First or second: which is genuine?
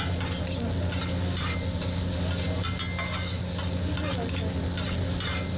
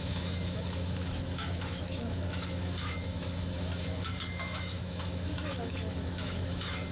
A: first